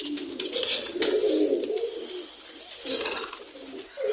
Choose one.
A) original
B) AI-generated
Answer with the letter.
A